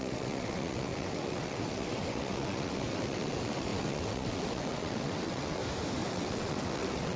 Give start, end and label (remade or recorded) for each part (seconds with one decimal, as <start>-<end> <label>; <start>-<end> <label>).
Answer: 0.0-5.6 remade; 5.6-6.1 recorded; 6.1-7.2 remade